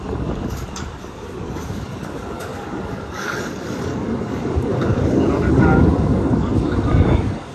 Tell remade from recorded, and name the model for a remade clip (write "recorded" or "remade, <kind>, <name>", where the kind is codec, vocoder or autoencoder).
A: remade, codec, DAC